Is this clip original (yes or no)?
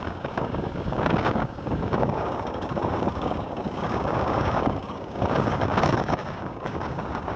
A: no